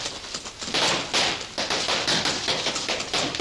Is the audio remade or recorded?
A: recorded